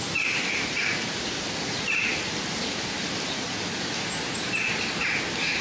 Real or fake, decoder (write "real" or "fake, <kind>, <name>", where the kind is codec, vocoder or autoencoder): real